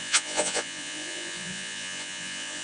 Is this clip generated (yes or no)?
yes